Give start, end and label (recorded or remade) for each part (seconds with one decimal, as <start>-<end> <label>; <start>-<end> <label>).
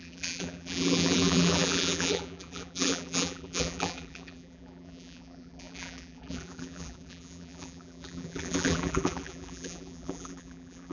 0.0-10.9 remade